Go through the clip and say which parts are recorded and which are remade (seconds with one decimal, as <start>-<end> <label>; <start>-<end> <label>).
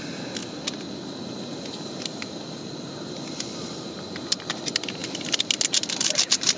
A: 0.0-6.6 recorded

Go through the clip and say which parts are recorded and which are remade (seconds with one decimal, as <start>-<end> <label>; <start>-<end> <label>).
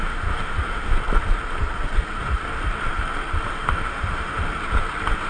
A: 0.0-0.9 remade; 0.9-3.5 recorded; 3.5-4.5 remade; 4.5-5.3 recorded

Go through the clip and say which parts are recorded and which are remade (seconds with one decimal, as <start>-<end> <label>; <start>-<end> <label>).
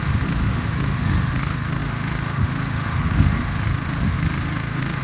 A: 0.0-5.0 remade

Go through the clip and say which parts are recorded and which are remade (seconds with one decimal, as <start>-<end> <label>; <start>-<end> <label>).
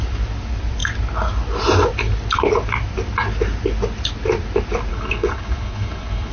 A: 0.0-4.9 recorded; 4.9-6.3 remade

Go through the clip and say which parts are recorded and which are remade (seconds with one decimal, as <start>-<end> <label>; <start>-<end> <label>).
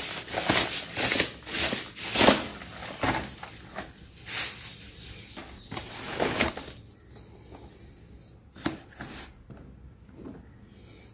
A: 0.0-11.1 recorded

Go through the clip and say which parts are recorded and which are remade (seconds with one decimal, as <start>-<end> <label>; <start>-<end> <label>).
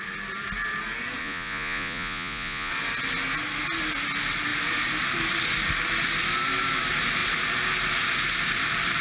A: 0.0-1.2 recorded; 1.2-2.7 remade; 2.7-9.0 recorded